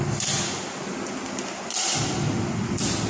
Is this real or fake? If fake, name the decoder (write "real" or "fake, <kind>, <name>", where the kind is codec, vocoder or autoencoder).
real